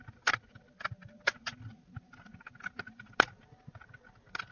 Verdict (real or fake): real